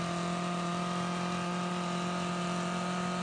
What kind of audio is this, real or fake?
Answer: real